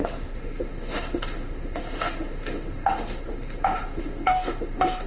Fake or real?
fake